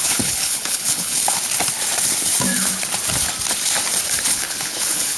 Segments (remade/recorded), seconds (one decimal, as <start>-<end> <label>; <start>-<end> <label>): 0.0-1.2 remade; 1.2-4.3 recorded; 4.3-5.2 remade